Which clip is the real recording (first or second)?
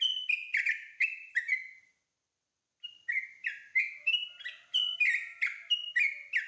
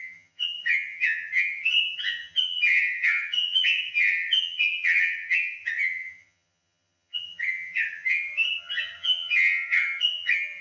first